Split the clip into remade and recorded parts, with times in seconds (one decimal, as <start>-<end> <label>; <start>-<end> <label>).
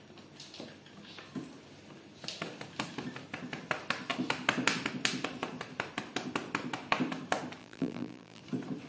0.0-7.6 recorded; 7.6-8.4 remade; 8.4-8.9 recorded